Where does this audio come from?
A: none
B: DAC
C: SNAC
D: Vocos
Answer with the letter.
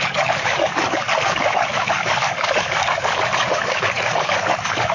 B